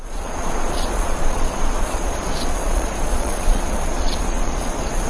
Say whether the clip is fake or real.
fake